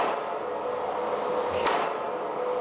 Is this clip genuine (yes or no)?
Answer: yes